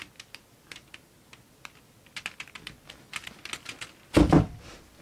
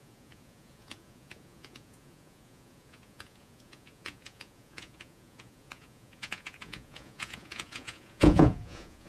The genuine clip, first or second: first